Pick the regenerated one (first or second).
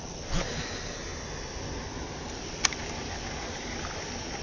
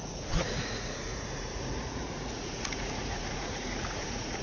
second